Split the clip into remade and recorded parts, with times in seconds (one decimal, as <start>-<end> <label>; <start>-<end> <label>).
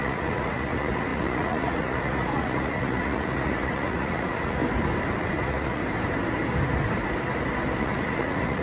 0.0-4.6 remade; 4.6-5.2 recorded; 5.2-5.8 remade; 5.8-7.8 recorded; 7.8-8.6 remade